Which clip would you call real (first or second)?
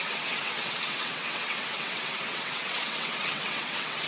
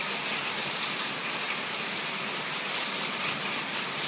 second